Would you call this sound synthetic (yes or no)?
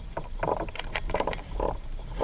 yes